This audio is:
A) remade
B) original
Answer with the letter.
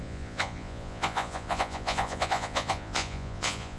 A